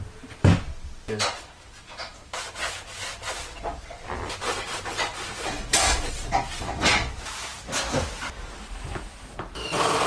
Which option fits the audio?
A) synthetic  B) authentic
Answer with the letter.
B